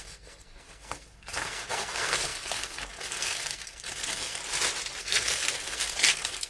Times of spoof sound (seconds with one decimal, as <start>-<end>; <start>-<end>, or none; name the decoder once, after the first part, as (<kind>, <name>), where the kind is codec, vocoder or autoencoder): 0.0-4.4 (codec, SNAC); 5.0-6.5